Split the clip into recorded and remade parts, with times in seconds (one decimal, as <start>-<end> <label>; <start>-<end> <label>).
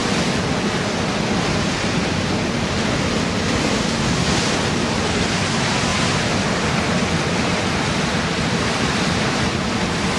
0.0-5.1 recorded; 5.1-5.9 remade; 5.9-6.7 recorded; 6.7-10.2 remade